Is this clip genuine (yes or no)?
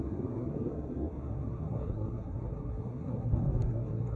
no